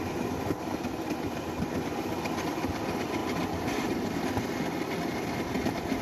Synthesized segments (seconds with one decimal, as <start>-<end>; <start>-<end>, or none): none